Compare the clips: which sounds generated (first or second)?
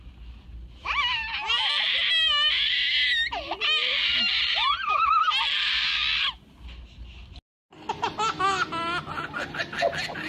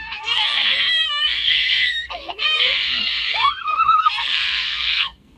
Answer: second